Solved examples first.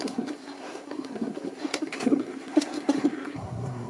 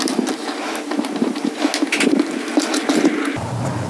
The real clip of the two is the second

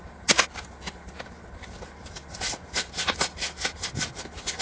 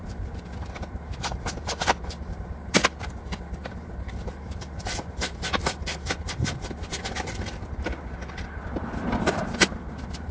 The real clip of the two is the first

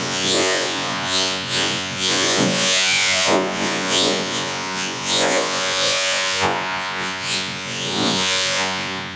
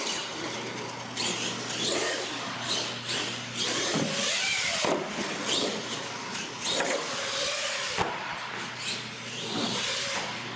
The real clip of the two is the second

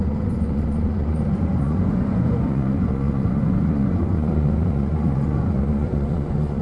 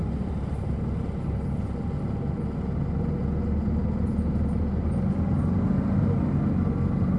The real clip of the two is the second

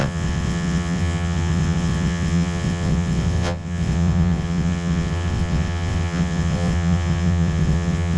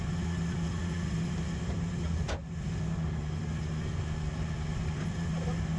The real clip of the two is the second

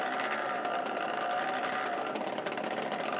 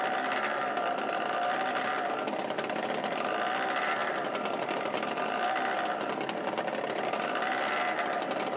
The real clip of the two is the second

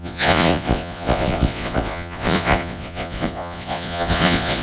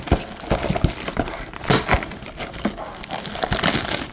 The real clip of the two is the second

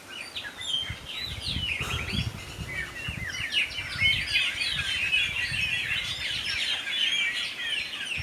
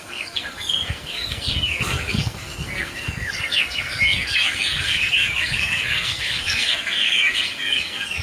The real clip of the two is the first